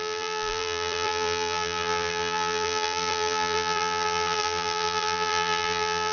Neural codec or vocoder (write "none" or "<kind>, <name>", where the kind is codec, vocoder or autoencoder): vocoder, BigVGAN v2